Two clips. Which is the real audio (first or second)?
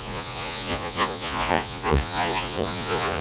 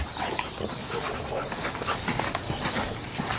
second